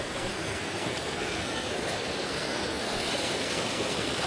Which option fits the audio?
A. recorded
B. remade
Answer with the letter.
B